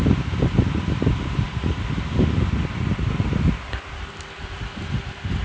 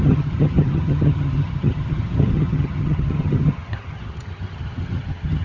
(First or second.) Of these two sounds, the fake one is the second